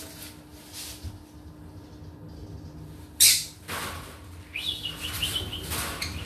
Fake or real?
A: real